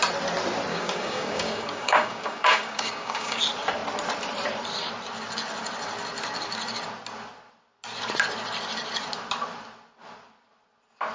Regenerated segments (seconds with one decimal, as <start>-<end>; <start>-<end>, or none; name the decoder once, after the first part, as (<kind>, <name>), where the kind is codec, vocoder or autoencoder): 0.7-3.4 (codec, DAC)